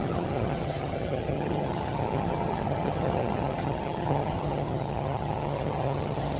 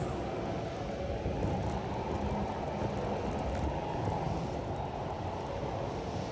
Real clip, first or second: second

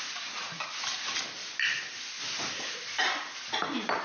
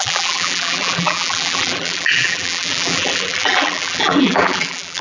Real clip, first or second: first